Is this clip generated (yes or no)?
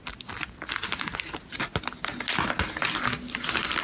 no